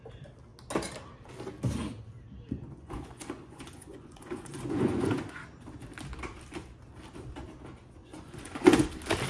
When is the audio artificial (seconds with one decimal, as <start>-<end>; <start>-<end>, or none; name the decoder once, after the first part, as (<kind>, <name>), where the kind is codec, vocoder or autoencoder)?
2.6-5.4 (vocoder, Vocos); 8.0-8.9